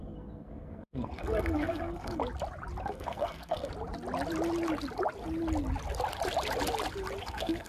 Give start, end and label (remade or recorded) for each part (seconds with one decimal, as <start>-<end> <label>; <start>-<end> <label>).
0.0-2.2 remade; 2.2-2.8 recorded; 2.8-3.7 remade; 3.7-7.2 recorded; 7.2-7.7 remade